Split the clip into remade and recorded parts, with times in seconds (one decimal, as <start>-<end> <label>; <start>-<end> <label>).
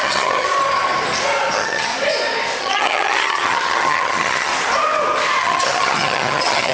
0.0-0.5 remade; 0.5-1.5 recorded; 1.5-1.9 remade; 1.9-2.6 recorded; 2.6-4.5 remade; 4.5-5.4 recorded; 5.4-6.7 remade